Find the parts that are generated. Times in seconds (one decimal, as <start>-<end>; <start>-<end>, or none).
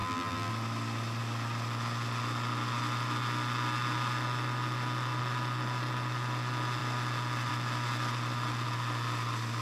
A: 0.0-0.5